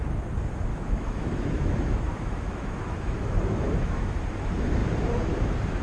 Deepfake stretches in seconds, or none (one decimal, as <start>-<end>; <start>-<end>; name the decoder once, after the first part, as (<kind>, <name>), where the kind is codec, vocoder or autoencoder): 0.7-4.2 (autoencoder, DAC-VAE)